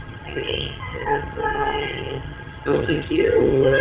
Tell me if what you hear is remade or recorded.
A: remade